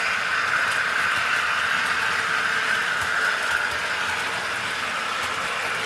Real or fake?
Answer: real